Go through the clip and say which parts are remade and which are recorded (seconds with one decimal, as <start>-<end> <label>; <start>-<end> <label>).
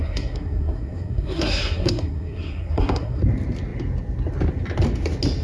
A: 0.0-3.2 remade; 3.2-5.4 recorded